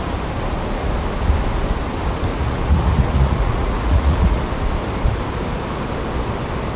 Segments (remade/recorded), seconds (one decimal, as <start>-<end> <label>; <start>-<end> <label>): 0.0-2.3 recorded; 2.3-4.4 remade; 4.4-6.8 recorded